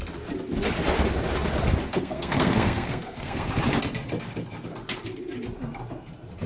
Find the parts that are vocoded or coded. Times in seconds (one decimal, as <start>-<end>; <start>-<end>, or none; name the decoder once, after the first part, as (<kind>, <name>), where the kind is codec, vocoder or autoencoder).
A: 1.9-3.5 (codec, SNAC)